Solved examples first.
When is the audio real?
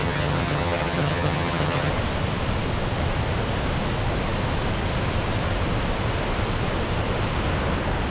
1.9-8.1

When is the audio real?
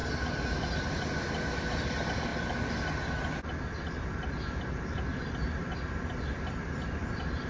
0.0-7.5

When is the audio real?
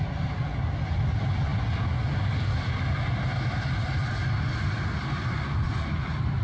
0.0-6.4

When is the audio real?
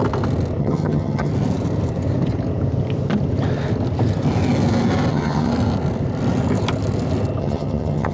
0.0-0.6; 1.3-5.1; 5.5-7.4